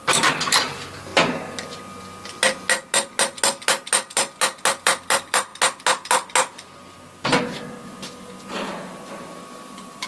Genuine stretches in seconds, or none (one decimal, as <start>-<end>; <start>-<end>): 1.1-4.8; 5.5-7.4